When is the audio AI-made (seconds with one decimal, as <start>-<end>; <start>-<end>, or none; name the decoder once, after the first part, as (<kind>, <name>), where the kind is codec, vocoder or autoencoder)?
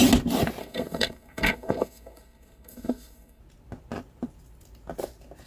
0.6-3.4 (codec, SNAC)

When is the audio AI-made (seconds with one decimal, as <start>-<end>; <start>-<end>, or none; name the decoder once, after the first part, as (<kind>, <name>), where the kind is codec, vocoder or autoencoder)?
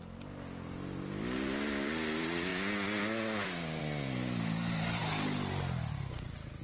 none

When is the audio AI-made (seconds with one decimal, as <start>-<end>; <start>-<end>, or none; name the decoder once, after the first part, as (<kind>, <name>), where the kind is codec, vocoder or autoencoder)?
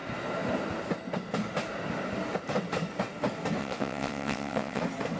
3.6-4.8 (vocoder, WaveNeXt)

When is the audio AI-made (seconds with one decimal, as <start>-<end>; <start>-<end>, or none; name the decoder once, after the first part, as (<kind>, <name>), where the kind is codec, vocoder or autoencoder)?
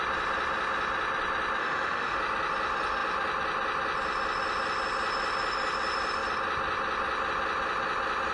1.6-2.2 (autoencoder, DAC-VAE)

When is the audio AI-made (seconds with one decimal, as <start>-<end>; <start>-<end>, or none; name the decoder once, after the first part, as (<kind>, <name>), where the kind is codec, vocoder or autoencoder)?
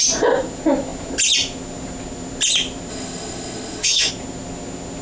2.9-4.1 (autoencoder, DAC-VAE)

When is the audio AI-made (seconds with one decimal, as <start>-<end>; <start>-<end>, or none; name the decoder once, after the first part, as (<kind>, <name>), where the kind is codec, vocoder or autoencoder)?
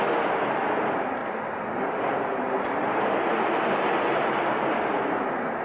none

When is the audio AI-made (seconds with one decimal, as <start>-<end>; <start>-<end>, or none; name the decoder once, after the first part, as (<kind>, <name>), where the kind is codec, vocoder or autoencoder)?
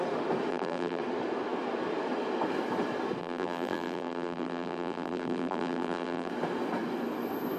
0.5-1.0 (vocoder, BigVGAN v2); 3.2-6.3